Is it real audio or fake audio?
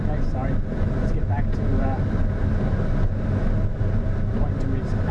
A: real